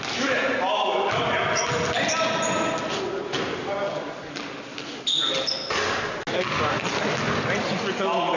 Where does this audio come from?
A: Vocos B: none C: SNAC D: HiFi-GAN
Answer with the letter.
B